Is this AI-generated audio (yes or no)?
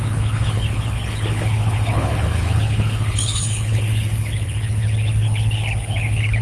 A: yes